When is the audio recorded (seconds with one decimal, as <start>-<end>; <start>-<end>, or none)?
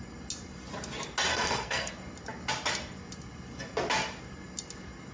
0.0-1.3; 1.9-5.1